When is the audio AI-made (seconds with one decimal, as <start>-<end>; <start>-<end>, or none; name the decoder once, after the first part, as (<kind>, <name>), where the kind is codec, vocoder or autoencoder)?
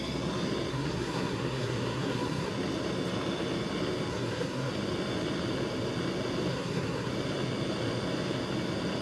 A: 0.7-2.5 (codec, SNAC); 4.1-4.7; 6.5-7.1